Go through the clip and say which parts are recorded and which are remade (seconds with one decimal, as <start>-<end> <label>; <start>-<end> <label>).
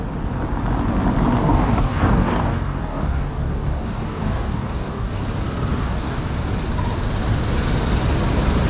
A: 0.0-1.4 recorded; 1.4-5.2 remade; 5.2-5.7 recorded; 5.7-6.2 remade; 6.2-8.7 recorded